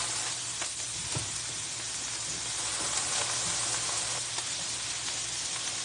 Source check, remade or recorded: recorded